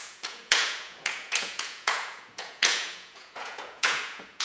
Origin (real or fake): fake